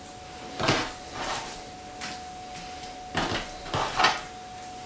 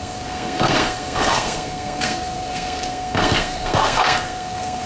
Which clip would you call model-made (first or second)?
second